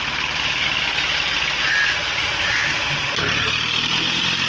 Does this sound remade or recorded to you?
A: recorded